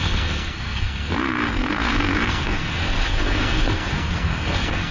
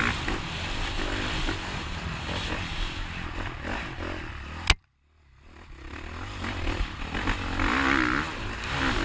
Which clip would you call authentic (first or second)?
second